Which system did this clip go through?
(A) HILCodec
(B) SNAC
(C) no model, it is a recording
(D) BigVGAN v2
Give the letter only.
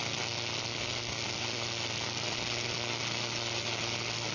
C